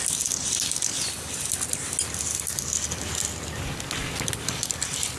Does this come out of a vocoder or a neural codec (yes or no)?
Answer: no